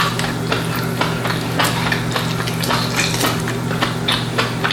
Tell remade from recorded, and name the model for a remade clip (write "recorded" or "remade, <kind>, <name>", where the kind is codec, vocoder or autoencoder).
recorded